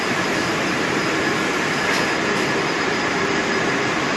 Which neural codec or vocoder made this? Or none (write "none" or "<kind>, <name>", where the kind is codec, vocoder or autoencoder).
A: vocoder, BigVGAN v2